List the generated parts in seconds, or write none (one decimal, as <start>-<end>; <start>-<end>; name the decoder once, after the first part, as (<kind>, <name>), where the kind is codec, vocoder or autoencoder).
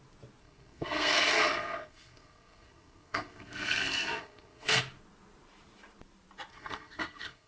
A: 0.4-4.8 (codec, SNAC); 6.5-7.5